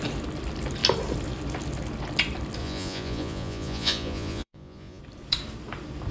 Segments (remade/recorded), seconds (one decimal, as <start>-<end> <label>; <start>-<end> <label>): 0.0-2.6 recorded; 2.6-5.0 remade; 5.0-6.1 recorded